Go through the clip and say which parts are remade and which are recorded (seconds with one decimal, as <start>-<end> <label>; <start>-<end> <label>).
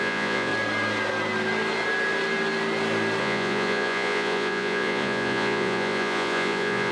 0.0-0.5 remade; 0.5-3.2 recorded; 3.2-6.9 remade